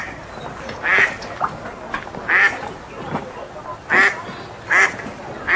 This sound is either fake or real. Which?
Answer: real